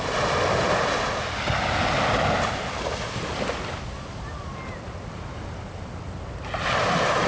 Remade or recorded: recorded